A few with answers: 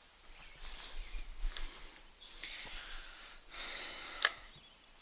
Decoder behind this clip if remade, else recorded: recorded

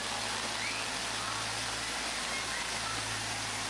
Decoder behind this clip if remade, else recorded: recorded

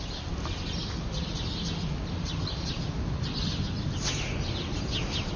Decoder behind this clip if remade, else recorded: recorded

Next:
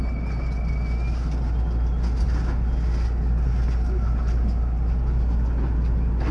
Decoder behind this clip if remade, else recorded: recorded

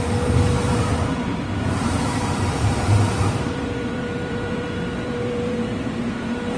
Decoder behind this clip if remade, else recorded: remade, vocoder, BigVGAN v2